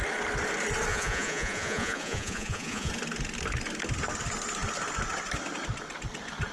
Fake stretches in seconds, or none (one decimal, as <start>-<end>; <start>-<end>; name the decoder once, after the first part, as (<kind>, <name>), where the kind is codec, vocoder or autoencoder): 0.9-2.9 (vocoder, Vocos)